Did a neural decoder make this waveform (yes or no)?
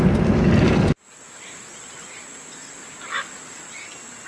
no